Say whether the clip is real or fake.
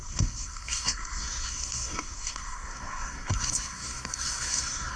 fake